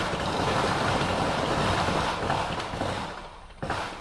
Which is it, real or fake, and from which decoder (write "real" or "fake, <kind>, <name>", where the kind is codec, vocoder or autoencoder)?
fake, vocoder, BigVGAN v2